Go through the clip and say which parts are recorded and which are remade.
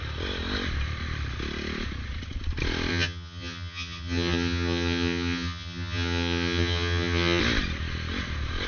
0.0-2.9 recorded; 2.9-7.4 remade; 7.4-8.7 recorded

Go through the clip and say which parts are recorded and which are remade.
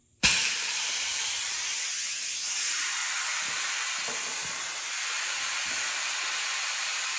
0.0-1.7 remade; 1.7-3.0 recorded; 3.0-3.7 remade; 3.7-4.4 recorded; 4.4-4.9 remade; 4.9-7.2 recorded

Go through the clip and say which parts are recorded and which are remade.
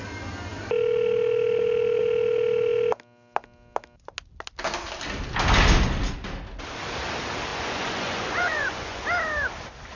0.0-7.5 recorded; 7.5-9.0 remade; 9.0-10.0 recorded